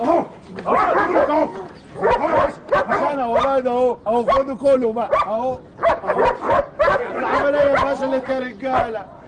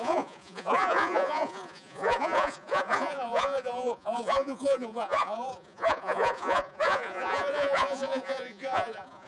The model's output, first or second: second